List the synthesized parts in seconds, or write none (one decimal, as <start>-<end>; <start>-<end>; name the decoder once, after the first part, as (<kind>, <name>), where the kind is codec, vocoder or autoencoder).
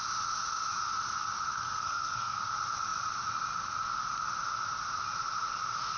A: 1.5-2.4 (codec, SNAC)